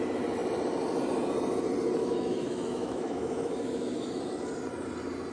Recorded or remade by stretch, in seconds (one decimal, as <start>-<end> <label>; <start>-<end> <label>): 0.0-2.0 recorded; 2.0-4.2 remade; 4.2-5.3 recorded